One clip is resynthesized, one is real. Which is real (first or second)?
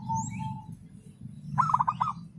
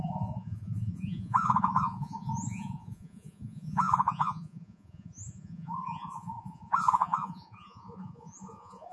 first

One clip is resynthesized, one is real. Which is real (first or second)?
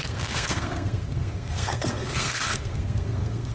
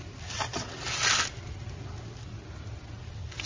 second